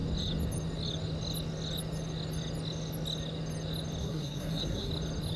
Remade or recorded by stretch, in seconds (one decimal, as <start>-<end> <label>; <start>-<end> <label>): 0.0-4.0 recorded; 4.0-4.9 remade; 4.9-5.4 recorded